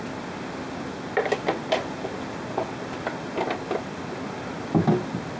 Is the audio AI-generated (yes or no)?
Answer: no